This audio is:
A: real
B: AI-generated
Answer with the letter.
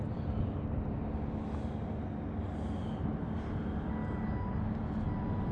A